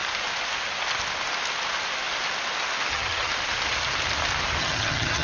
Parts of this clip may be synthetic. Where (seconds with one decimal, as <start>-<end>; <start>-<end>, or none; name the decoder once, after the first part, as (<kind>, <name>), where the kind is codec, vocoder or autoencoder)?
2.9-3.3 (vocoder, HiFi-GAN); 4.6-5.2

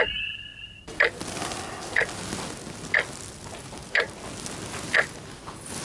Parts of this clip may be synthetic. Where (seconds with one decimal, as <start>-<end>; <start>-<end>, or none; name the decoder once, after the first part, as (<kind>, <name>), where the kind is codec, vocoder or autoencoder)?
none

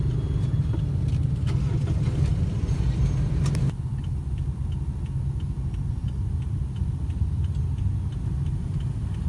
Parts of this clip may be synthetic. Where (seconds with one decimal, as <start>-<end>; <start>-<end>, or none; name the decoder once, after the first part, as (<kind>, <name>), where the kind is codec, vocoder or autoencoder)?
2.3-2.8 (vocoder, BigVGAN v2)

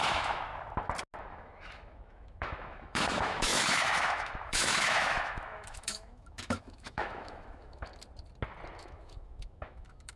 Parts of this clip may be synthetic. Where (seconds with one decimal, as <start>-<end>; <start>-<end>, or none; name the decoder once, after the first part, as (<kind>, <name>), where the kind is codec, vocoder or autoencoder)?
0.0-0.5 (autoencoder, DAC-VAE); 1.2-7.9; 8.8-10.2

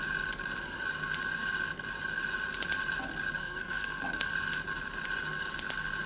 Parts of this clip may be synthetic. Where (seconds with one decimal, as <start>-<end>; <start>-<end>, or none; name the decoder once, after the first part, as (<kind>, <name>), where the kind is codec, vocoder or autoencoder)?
3.4-4.3 (codec, SNAC)